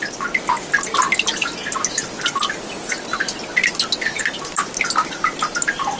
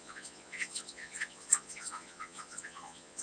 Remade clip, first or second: second